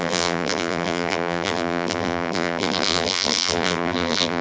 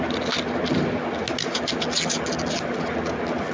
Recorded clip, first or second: second